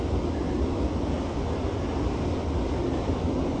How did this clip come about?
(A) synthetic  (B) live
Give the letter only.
B